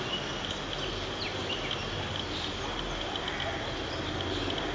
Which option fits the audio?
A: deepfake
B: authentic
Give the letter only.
B